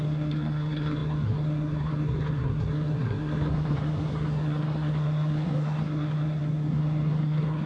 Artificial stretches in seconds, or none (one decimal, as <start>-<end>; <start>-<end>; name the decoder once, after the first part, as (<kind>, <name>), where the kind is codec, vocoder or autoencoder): 0.0-7.7 (codec, SNAC)